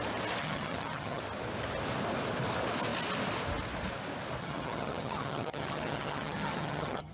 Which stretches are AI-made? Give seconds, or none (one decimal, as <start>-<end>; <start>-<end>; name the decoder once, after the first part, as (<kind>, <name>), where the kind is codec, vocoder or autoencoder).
0.4-1.2 (vocoder, HiFi-GAN); 4.4-7.1